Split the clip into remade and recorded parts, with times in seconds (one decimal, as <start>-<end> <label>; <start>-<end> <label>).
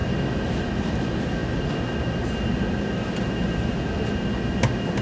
0.0-5.0 recorded